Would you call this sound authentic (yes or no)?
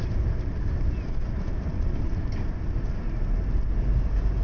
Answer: yes